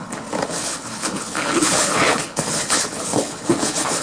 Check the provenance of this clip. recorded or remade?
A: remade